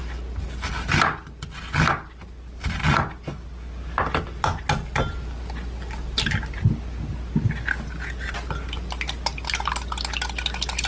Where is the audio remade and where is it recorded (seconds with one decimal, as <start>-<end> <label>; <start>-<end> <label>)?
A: 0.0-10.9 recorded